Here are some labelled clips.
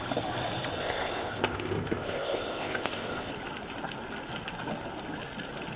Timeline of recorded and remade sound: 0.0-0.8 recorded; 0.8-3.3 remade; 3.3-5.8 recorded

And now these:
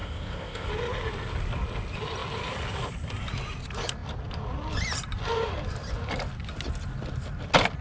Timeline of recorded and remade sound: 0.0-0.7 remade; 0.7-7.8 recorded

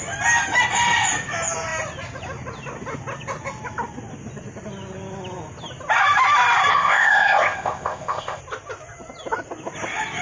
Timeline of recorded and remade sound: 0.0-6.7 recorded; 6.7-8.4 remade; 8.4-10.2 recorded